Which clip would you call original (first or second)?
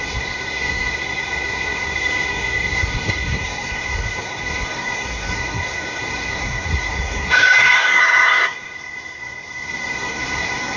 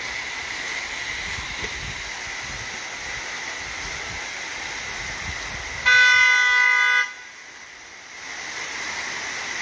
second